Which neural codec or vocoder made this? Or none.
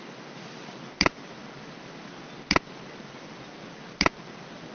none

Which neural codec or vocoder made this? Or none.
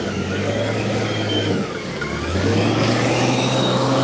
codec, DAC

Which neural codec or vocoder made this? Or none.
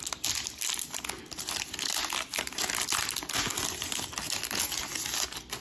none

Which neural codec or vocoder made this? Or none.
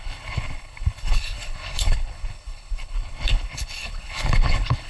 codec, HILCodec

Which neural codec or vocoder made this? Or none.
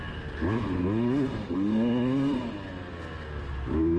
none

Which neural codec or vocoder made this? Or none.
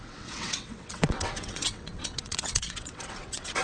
vocoder, WaveNeXt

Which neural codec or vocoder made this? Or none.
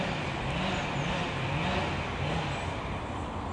none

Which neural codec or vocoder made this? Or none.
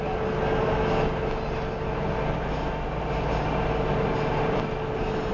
none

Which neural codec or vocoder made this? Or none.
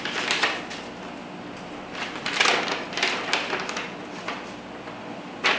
none